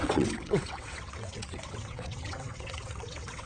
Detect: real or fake fake